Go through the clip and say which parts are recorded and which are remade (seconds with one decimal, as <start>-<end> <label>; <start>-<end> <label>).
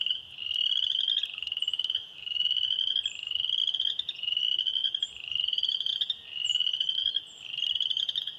0.0-8.4 recorded